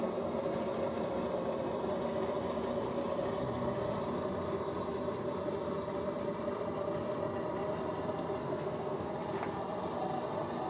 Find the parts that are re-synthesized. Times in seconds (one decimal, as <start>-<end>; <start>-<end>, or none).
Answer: 8.4-9.1